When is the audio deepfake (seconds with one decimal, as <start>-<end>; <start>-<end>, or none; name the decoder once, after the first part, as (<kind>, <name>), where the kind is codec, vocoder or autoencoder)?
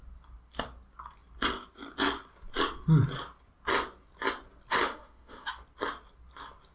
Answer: 4.7-5.5 (autoencoder, DAC-VAE)